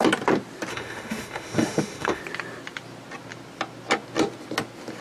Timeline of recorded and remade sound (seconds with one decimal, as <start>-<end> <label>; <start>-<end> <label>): 0.0-0.7 recorded; 0.7-2.2 remade; 2.2-5.0 recorded